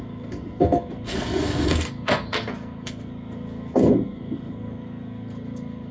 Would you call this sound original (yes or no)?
no